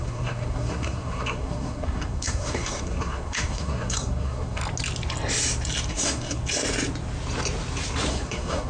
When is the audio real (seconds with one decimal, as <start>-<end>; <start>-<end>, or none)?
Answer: 4.6-5.9; 6.4-8.1